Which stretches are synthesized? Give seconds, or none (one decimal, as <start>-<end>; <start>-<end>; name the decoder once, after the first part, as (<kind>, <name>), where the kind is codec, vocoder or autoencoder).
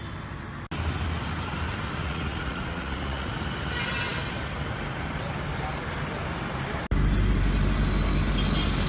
2.0-3.3 (vocoder, Vocos)